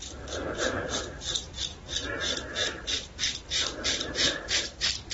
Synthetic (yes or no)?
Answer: no